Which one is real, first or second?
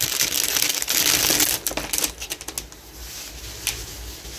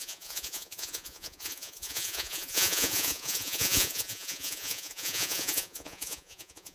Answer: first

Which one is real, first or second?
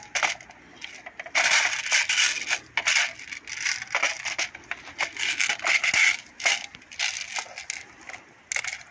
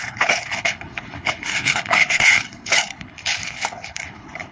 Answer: first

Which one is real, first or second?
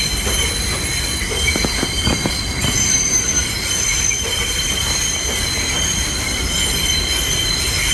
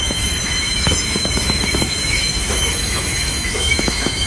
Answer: first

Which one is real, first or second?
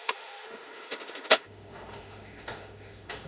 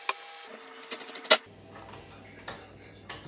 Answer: second